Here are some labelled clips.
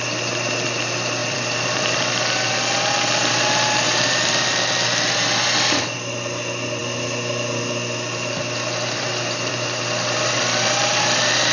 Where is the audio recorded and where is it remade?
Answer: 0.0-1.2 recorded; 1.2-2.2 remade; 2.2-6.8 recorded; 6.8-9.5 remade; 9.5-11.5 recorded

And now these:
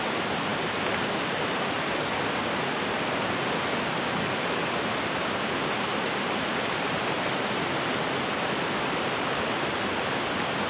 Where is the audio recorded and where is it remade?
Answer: 0.0-10.7 recorded

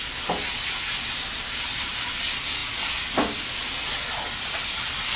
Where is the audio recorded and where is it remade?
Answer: 0.0-5.2 recorded

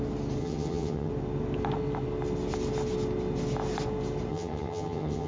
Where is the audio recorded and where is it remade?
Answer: 0.0-0.4 recorded; 0.4-1.1 remade; 1.1-4.3 recorded; 4.3-5.3 remade

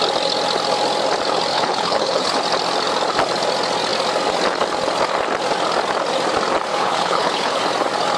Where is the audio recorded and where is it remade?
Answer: 0.0-1.5 recorded; 1.5-2.4 remade; 2.4-6.7 recorded; 6.7-7.6 remade; 7.6-8.2 recorded

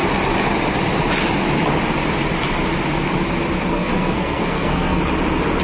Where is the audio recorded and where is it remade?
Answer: 0.0-3.7 recorded; 3.7-5.0 remade; 5.0-5.6 recorded

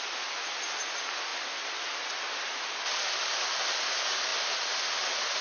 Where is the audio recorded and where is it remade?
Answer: 0.0-5.4 recorded

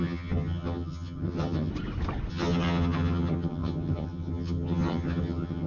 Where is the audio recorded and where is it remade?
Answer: 0.0-1.7 remade; 1.7-2.3 recorded; 2.3-5.7 remade